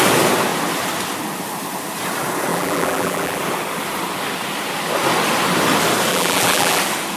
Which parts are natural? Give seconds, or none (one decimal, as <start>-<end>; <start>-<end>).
0.0-2.5; 3.4-6.1; 6.8-7.2